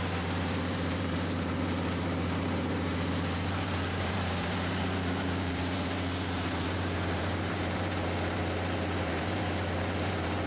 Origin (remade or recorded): remade